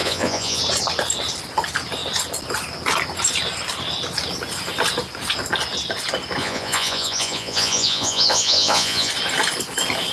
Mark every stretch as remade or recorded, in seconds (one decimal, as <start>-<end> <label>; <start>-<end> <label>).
0.0-0.6 remade; 0.6-6.4 recorded; 6.4-9.1 remade; 9.1-10.1 recorded